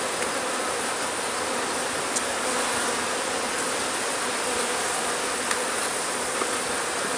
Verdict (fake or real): real